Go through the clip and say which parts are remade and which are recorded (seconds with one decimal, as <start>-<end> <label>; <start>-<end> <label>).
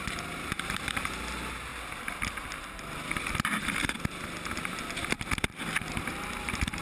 0.0-1.7 remade; 1.7-5.8 recorded; 5.8-6.8 remade